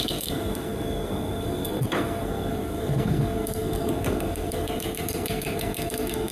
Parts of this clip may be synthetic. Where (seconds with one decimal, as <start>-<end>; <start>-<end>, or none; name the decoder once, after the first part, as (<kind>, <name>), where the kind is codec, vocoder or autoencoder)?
0.0-6.3 (codec, SNAC)